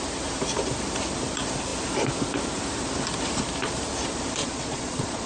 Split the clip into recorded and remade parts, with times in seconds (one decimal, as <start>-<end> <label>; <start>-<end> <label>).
0.0-4.4 recorded; 4.4-5.3 remade